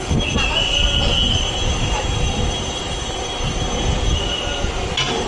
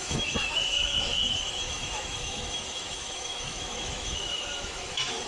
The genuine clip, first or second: first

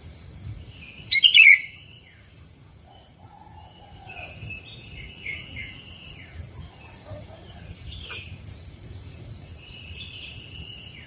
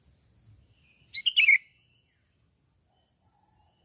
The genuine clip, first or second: second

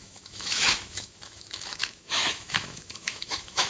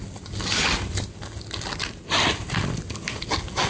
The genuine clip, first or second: second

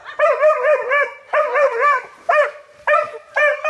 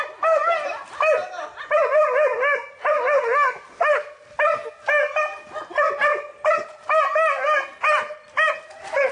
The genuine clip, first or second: second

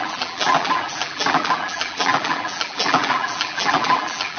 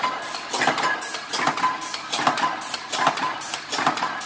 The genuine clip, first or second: second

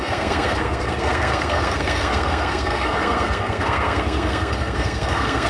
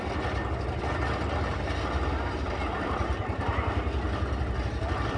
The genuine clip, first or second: second